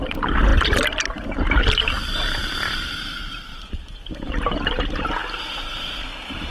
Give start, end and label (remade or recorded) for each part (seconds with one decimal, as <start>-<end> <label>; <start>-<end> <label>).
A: 0.0-3.5 recorded; 3.5-4.3 remade; 4.3-6.5 recorded